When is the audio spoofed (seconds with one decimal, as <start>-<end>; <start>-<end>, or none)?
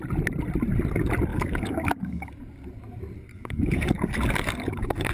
1.3-2.3; 3.3-5.1